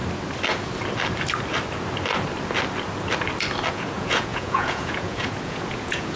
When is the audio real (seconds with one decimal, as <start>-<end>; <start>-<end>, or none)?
0.0-3.7